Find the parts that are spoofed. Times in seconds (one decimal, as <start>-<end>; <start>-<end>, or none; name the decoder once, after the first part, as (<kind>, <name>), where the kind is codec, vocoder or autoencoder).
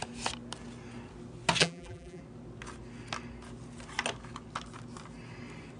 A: 1.6-2.2 (vocoder, BigVGAN v2)